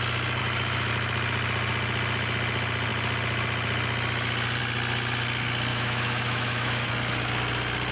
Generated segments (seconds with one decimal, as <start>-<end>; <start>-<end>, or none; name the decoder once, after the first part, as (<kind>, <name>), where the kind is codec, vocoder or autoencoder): 0.4-0.9 (autoencoder, DAC-VAE); 5.7-6.9